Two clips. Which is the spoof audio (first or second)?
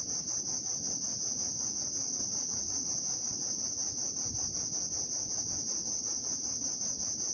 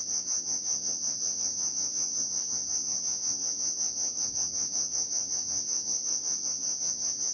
second